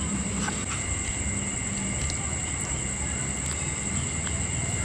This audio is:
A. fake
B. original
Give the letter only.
B